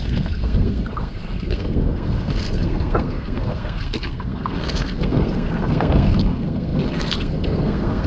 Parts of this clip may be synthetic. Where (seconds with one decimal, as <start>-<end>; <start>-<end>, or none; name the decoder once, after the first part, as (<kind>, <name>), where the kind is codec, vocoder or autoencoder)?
0.0-8.1 (codec, SNAC)